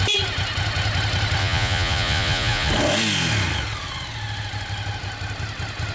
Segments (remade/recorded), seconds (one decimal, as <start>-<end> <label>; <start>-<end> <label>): 0.0-1.4 recorded; 1.4-2.7 remade; 2.7-5.9 recorded